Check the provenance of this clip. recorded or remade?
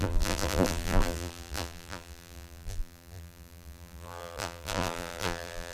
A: remade